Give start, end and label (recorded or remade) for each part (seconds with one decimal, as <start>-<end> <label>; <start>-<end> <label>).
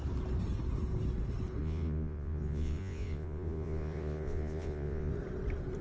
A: 0.0-1.6 recorded; 1.6-5.1 remade; 5.1-5.8 recorded